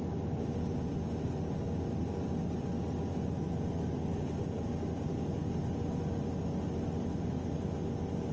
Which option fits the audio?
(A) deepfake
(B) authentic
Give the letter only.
B